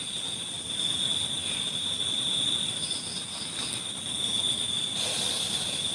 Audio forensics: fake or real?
real